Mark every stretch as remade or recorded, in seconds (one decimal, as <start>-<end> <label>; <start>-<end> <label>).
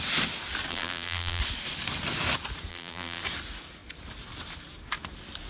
0.0-0.7 recorded; 0.7-1.4 remade; 1.4-2.7 recorded; 2.7-3.2 remade; 3.2-5.5 recorded